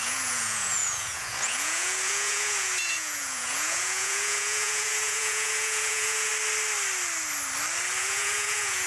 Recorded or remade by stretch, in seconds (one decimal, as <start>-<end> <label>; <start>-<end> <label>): 0.0-6.3 remade; 6.3-8.0 recorded; 8.0-8.9 remade